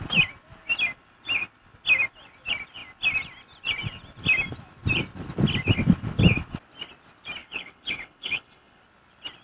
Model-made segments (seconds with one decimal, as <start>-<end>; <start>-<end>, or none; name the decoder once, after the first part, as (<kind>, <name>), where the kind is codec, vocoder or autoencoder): 7.4-8.8 (codec, HILCodec)